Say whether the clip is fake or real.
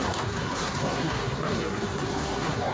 fake